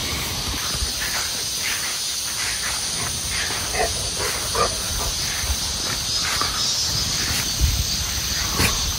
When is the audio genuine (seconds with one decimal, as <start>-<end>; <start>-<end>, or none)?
0.0-9.0